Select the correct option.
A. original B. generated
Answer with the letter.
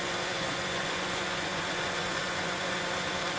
B